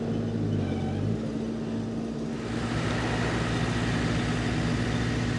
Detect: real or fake real